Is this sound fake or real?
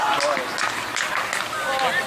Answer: real